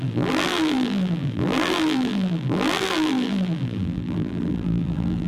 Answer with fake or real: fake